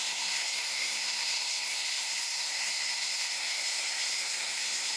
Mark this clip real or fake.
fake